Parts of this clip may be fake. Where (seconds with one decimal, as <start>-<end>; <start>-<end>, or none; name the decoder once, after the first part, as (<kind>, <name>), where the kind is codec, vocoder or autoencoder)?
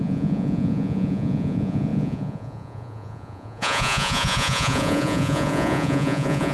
0.0-6.5 (vocoder, Vocos)